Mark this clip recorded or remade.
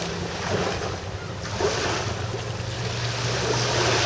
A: recorded